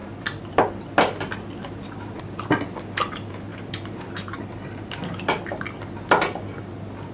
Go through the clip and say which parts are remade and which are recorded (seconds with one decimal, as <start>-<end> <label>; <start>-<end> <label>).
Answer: 0.0-3.5 recorded; 3.5-5.2 remade; 5.2-7.1 recorded